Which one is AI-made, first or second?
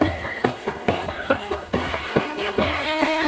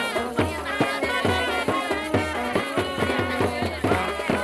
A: first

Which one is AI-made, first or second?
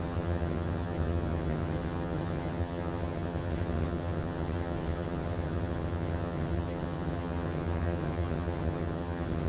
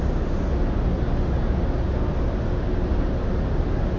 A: first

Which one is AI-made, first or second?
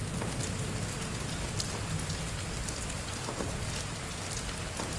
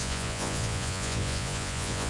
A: second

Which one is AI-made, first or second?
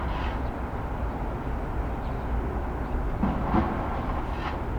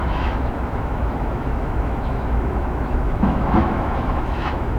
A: second